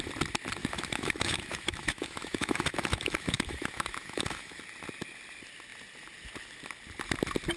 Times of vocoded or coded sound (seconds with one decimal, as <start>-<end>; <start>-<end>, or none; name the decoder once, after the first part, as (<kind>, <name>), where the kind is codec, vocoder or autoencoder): 0.6-4.6 (autoencoder, DAC-VAE)